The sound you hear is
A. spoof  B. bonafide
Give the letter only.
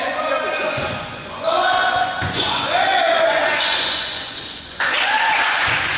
A